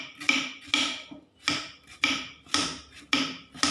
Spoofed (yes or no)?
no